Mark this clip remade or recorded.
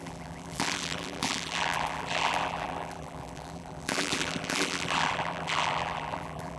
remade